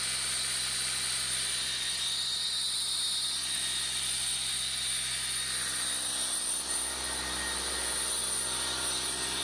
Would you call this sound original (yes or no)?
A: yes